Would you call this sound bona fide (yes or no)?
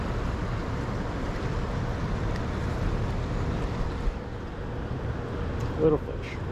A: yes